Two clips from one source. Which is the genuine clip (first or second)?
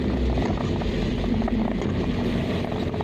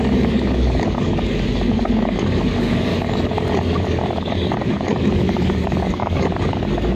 first